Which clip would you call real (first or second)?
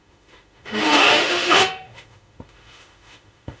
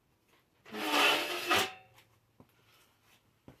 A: second